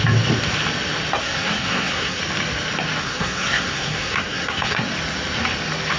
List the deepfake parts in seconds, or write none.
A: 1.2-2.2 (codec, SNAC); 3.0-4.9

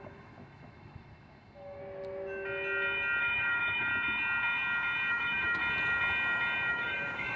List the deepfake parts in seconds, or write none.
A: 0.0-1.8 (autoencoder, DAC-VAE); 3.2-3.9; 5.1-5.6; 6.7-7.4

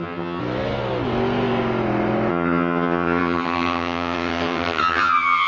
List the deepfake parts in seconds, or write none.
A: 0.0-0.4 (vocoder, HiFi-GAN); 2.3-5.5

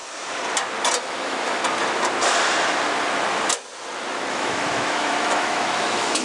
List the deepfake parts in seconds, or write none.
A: 1.0-1.6 (autoencoder, DAC-VAE); 4.3-6.2

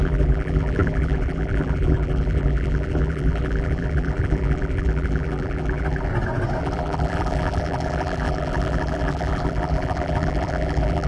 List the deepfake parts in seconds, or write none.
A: 0.0-6.1 (vocoder, BigVGAN v2); 6.6-11.1

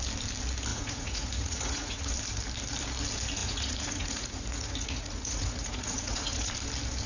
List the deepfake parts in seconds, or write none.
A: 0.7-2.1 (vocoder, Vocos); 3.4-6.5

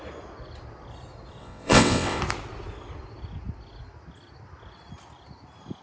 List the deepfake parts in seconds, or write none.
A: 1.4-2.2 (vocoder, WaveNeXt)

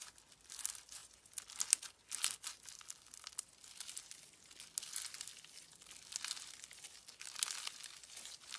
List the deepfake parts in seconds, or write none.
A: none